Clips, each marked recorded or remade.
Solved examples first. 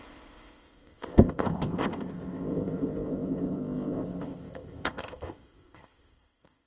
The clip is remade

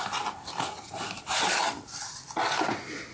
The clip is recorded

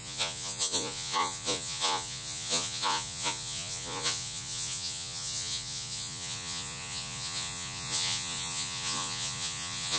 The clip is remade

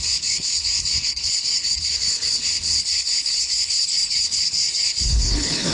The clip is remade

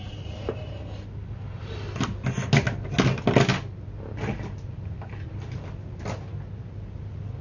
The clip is recorded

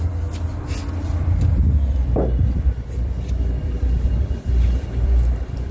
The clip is remade